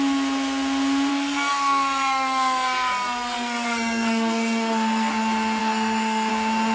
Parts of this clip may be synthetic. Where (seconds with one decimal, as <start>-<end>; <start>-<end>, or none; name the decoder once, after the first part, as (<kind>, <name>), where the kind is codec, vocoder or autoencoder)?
1.1-5.1 (codec, SNAC); 5.6-6.3